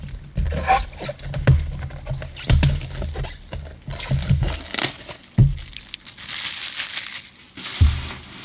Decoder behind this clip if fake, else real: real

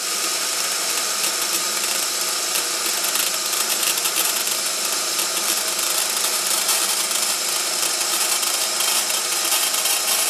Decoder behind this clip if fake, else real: fake, vocoder, BigVGAN v2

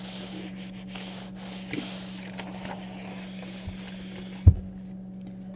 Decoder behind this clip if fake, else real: real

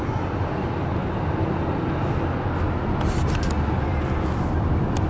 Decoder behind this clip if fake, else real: real